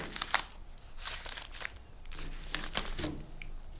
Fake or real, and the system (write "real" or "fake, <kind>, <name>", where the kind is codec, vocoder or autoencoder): real